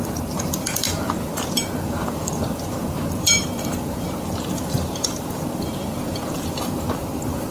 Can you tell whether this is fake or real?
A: fake